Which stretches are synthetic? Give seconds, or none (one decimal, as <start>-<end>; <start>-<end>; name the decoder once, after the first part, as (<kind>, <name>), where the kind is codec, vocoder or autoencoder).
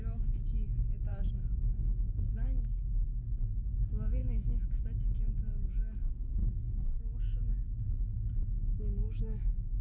1.1-3.0 (autoencoder, DAC-VAE); 4.2-4.8; 6.4-9.8